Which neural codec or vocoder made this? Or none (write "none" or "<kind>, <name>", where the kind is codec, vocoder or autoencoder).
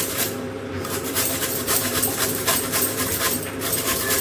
vocoder, BigVGAN v2